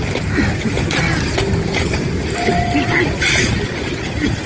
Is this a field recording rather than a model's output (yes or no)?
yes